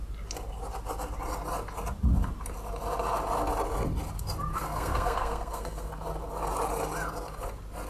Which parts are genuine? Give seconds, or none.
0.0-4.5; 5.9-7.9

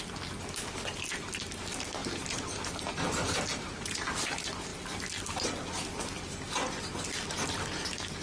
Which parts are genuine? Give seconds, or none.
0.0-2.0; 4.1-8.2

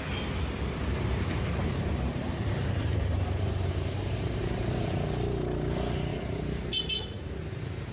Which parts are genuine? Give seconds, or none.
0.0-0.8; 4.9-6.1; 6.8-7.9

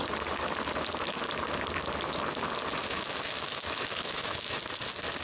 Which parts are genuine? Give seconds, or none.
0.0-2.9; 4.6-5.2

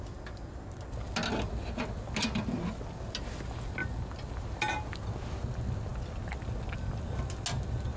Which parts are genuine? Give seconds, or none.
0.0-8.0